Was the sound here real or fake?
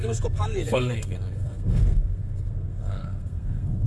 fake